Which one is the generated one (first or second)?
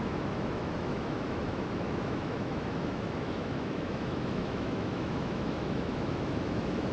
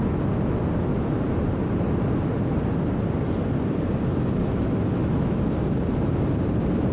first